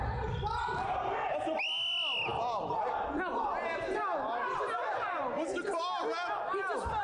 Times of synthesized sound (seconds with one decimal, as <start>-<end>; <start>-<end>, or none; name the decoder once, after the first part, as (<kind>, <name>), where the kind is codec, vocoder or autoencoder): none